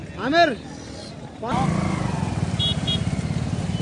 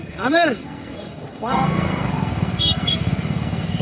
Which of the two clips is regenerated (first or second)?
second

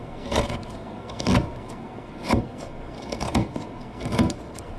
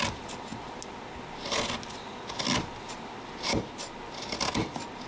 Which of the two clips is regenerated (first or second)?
first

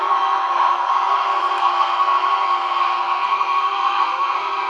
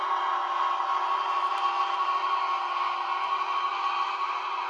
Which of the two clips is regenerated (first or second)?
first